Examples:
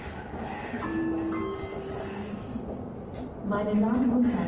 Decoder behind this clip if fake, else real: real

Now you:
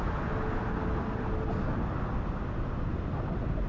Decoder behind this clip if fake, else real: real